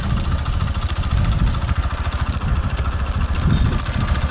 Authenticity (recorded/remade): recorded